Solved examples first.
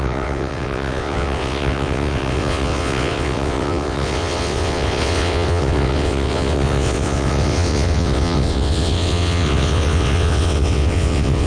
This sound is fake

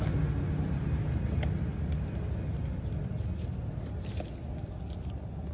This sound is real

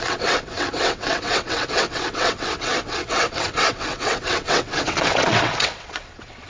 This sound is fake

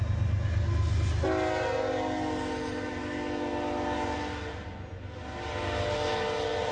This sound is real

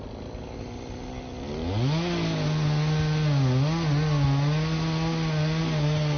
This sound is real